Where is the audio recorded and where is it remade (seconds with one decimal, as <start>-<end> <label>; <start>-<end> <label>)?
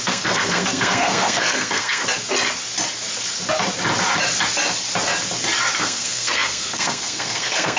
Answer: 0.0-2.0 remade; 2.0-5.8 recorded; 5.8-7.8 remade